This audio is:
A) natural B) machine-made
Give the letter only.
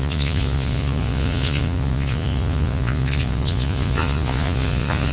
B